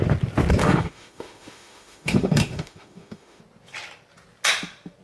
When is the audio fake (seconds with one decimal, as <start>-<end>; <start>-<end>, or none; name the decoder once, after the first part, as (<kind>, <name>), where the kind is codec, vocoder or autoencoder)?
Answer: 0.6-3.4 (autoencoder, DAC-VAE)